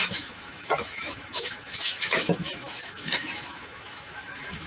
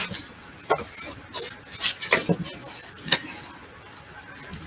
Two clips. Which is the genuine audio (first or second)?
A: second